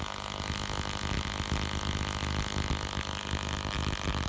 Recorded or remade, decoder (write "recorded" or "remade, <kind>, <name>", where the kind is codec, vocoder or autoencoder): recorded